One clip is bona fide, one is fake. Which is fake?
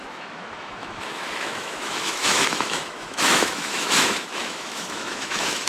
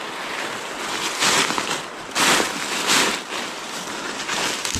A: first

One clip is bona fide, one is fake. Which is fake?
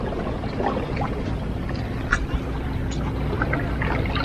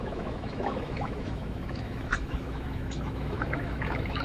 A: second